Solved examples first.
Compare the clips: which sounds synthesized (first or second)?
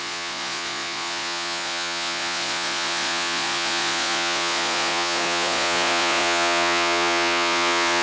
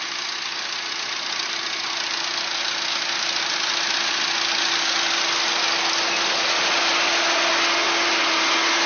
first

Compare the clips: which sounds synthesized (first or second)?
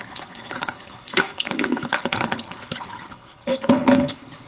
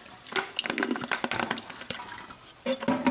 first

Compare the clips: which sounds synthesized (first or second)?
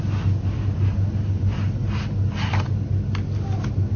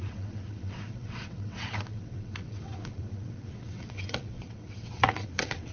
second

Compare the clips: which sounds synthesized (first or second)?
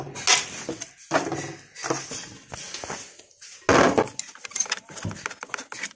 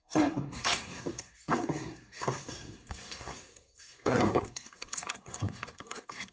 second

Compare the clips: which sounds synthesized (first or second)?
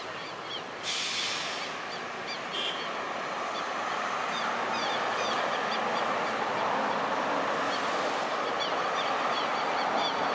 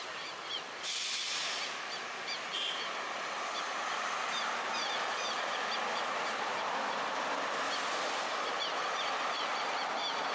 second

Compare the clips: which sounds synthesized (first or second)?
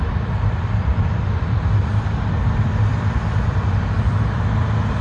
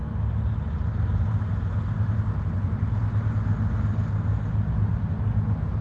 first